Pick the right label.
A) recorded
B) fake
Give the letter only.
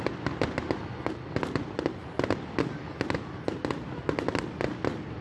A